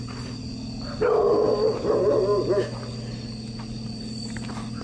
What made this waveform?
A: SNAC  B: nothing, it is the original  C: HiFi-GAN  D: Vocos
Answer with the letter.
B